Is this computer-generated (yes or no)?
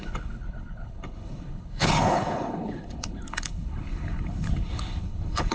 yes